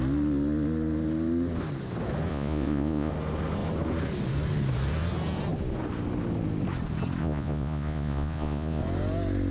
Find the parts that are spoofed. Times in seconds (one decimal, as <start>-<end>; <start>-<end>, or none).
2.3-3.1; 7.2-8.8